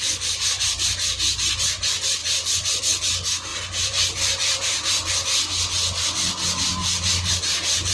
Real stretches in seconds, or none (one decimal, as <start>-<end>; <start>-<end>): 0.0-2.2; 2.8-3.5; 5.1-6.8; 7.3-7.9